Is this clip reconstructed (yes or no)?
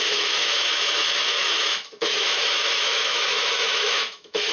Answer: yes